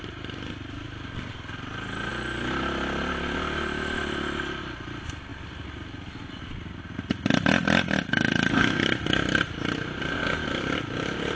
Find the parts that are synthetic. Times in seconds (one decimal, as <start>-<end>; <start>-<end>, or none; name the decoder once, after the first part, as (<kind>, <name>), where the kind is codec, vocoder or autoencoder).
none